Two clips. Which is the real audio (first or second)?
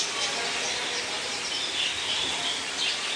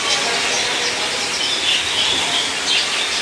second